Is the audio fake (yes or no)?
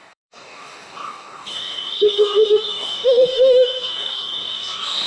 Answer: yes